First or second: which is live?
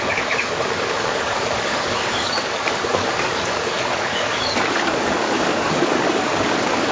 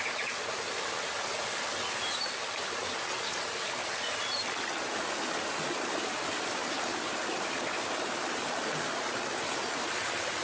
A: second